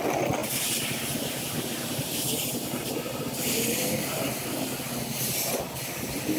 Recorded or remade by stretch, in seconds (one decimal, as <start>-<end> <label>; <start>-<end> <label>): 0.0-0.4 recorded; 0.4-4.2 remade; 4.2-6.4 recorded